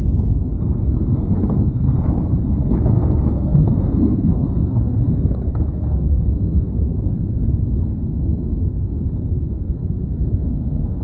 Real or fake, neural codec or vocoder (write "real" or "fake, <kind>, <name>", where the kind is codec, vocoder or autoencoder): fake, codec, SNAC